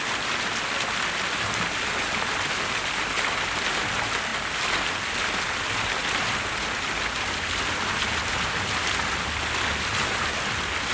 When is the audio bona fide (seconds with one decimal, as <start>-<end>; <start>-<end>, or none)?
0.0-10.9